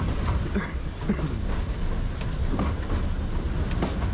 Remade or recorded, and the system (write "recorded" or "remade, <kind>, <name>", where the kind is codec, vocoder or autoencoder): recorded